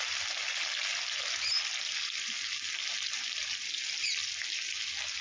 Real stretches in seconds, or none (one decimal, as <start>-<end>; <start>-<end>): 0.0-5.2